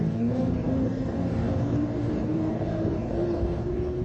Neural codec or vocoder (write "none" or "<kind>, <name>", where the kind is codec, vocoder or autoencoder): codec, DAC